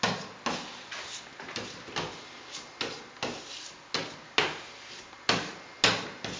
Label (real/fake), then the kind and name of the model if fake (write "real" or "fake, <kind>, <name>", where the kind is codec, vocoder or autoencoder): real